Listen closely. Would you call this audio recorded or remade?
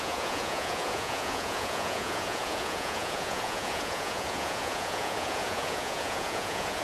remade